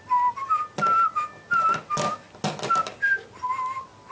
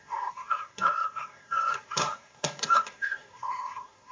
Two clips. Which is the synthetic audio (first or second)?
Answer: second